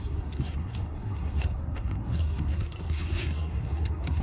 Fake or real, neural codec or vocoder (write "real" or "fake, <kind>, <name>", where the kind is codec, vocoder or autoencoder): fake, codec, SNAC